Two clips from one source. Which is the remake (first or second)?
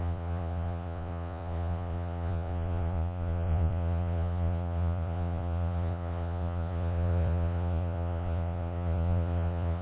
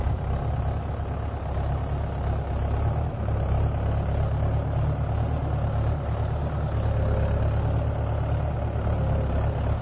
first